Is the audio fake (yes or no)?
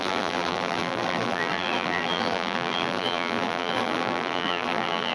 yes